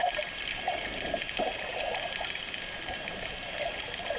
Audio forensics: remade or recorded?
recorded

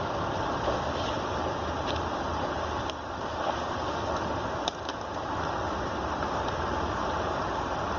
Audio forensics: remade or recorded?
recorded